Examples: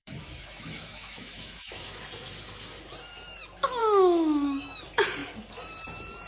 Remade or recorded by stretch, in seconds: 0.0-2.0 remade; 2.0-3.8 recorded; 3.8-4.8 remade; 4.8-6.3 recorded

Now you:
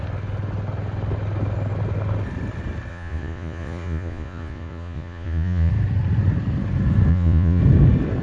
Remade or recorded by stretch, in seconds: 0.0-2.9 recorded; 2.9-5.7 remade; 5.7-7.1 recorded; 7.1-7.6 remade; 7.6-8.2 recorded

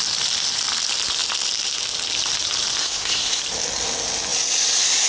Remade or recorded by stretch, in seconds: 0.0-2.8 recorded; 2.8-3.4 remade; 3.4-5.1 recorded

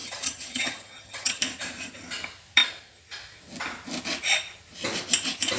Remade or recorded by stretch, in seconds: 0.0-1.4 remade; 1.4-5.6 recorded

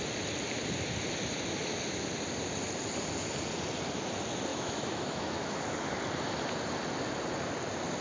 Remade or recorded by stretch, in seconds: 0.0-4.5 recorded; 4.5-5.5 remade; 5.5-8.0 recorded

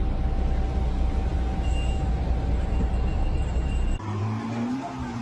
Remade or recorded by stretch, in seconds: 0.0-5.2 recorded

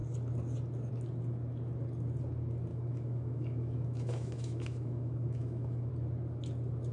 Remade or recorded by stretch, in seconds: 0.0-2.7 recorded; 2.7-5.9 remade; 5.9-6.9 recorded

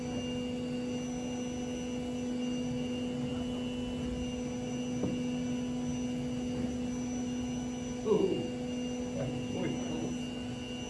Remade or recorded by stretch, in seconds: 0.0-10.9 recorded